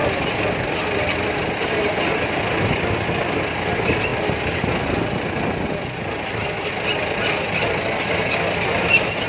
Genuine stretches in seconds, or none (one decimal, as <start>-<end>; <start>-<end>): 0.0-9.3